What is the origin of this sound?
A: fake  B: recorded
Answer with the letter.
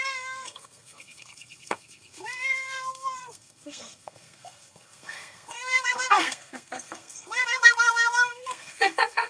A